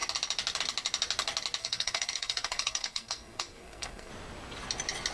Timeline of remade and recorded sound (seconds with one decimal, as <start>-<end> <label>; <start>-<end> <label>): 0.0-1.6 recorded; 1.6-4.1 remade; 4.1-5.1 recorded